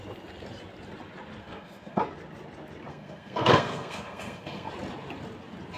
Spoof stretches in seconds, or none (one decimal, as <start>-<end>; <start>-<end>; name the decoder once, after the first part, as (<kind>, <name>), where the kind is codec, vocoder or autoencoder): 1.4-2.0 (codec, SNAC); 2.9-4.7